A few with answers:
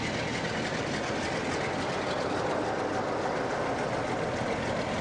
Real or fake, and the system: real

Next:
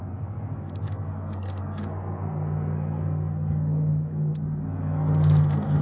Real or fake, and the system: fake, codec, SNAC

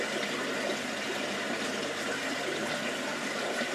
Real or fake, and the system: real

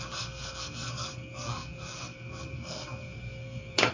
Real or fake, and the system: fake, codec, SNAC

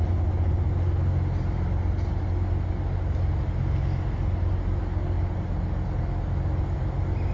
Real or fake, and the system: real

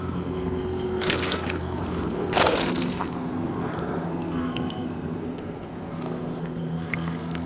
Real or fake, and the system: fake, codec, SNAC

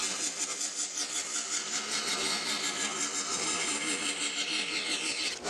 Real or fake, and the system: real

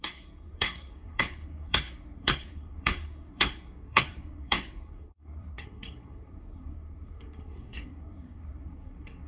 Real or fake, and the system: fake, codec, SNAC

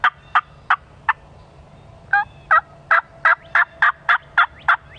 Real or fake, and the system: real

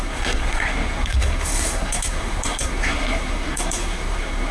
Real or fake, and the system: fake, codec, SNAC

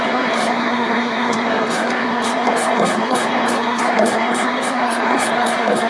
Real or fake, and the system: fake, codec, SNAC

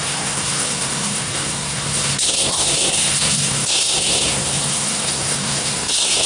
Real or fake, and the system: fake, codec, SNAC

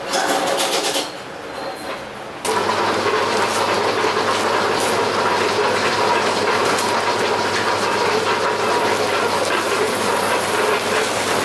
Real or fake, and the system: real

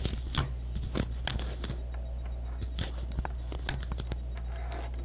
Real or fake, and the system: real